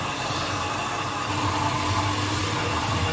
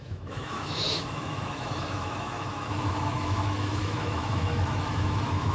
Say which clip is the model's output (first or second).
second